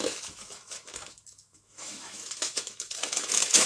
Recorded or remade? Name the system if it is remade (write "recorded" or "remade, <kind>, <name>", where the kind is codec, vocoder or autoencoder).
remade, autoencoder, DAC-VAE